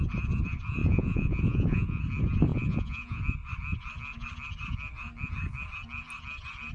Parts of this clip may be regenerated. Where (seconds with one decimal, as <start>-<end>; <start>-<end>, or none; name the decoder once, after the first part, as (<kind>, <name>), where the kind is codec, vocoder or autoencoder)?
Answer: 0.8-2.0 (vocoder, Vocos); 2.5-3.2

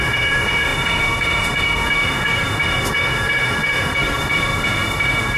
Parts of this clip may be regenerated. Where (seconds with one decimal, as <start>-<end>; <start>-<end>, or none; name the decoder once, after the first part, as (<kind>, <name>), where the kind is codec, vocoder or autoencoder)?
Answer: 0.0-5.4 (autoencoder, DAC-VAE)

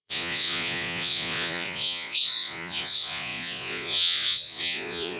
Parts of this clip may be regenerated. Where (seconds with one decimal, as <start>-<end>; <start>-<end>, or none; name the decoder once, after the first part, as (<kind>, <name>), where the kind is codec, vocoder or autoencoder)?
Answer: 0.0-5.2 (vocoder, Vocos)

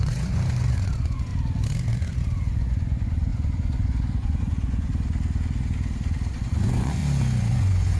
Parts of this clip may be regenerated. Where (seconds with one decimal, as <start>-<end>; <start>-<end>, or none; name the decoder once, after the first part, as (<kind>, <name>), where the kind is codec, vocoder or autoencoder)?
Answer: 0.0-1.3 (vocoder, Vocos); 1.9-4.9; 6.3-7.0; 7.5-8.0

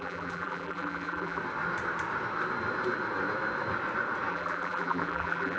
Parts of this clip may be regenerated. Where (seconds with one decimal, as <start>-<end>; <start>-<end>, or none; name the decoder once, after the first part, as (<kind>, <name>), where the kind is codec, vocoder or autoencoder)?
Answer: 0.0-1.4 (vocoder, BigVGAN v2); 4.3-5.6

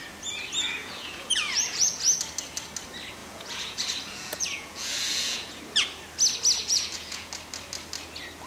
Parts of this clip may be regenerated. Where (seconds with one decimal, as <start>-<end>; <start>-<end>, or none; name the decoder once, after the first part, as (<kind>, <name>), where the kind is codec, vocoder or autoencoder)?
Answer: 0.8-2.0 (vocoder, Vocos); 3.2-5.6; 6.6-7.3

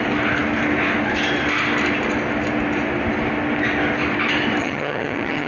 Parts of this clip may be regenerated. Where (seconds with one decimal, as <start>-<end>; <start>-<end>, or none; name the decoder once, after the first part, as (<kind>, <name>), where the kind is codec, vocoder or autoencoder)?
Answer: 4.6-5.5 (vocoder, HiFi-GAN)

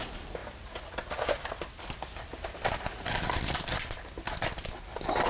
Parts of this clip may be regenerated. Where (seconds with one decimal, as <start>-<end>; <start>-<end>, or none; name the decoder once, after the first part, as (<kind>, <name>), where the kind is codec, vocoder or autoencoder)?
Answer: none